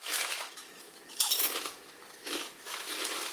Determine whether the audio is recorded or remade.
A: remade